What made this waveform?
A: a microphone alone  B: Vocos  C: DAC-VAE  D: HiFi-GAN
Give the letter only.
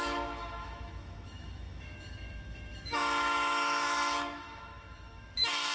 C